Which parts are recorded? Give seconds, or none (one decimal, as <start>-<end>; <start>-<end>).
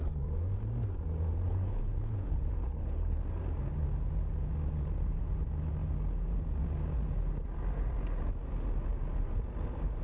0.0-1.5; 3.2-10.0